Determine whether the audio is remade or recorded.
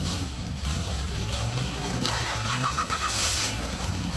remade